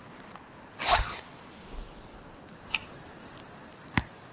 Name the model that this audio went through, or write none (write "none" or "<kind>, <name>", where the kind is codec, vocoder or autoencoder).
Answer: none